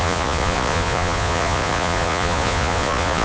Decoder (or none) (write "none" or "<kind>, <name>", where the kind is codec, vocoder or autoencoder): vocoder, Vocos